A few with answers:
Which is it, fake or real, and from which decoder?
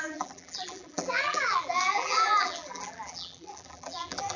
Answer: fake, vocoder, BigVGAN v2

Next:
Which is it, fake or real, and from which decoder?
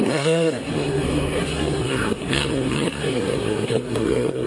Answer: fake, codec, SNAC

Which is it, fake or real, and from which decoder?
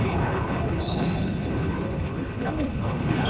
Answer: fake, codec, HILCodec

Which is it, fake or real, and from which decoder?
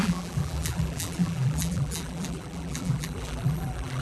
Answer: fake, vocoder, BigVGAN v2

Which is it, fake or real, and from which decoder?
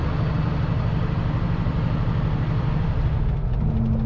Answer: real